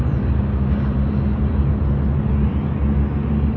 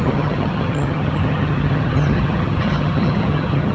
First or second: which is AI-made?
second